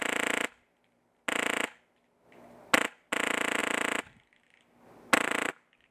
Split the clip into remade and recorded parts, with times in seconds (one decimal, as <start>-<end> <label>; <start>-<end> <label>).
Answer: 0.0-5.9 recorded